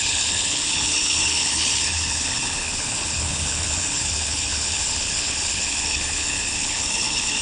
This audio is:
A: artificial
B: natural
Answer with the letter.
A